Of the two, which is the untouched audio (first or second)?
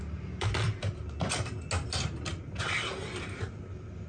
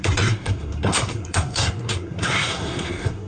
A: first